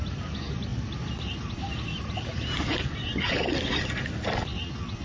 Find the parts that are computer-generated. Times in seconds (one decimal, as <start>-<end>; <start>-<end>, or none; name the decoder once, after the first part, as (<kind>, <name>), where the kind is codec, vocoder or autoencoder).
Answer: none

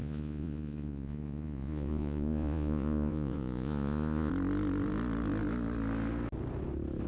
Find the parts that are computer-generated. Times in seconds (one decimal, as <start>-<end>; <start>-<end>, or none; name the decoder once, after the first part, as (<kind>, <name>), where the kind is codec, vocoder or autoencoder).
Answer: 0.0-4.3 (vocoder, Vocos)